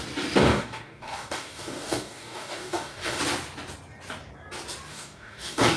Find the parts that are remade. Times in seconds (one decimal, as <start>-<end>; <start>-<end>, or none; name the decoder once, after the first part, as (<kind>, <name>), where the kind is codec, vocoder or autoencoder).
0.5-3.2 (codec, DAC); 4.9-5.8